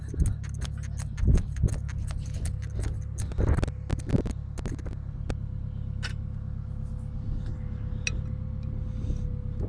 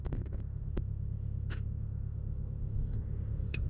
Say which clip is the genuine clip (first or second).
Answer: first